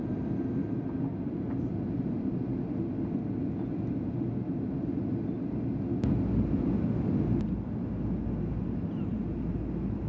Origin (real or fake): real